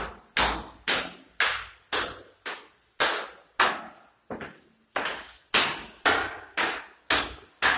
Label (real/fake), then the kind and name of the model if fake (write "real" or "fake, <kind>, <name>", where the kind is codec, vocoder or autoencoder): real